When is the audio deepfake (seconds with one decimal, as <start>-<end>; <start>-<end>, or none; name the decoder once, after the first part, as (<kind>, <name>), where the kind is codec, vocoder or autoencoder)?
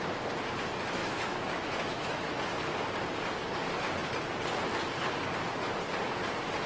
1.0-2.4 (autoencoder, DAC-VAE)